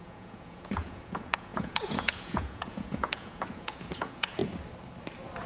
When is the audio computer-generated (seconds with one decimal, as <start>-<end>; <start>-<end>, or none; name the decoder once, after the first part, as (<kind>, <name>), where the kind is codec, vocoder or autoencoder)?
0.0-4.4 (vocoder, Vocos)